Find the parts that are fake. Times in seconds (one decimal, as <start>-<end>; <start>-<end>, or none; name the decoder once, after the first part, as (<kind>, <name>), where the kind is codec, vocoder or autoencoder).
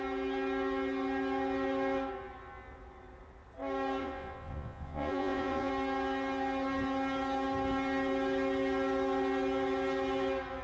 4.0-5.7 (vocoder, Vocos)